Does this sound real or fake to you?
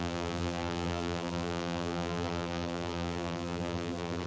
fake